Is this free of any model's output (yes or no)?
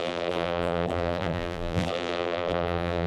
no